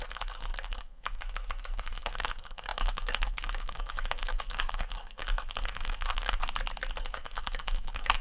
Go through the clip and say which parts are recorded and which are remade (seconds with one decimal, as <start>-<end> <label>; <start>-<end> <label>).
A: 0.0-6.4 remade; 6.4-7.0 recorded; 7.0-8.2 remade